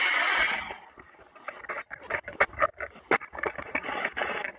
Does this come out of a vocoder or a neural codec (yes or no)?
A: no